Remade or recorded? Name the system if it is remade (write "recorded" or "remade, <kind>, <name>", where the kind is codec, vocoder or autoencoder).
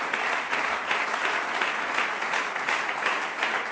recorded